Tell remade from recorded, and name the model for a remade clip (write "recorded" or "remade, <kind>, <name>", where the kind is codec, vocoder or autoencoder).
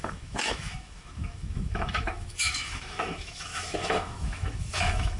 remade, autoencoder, DAC-VAE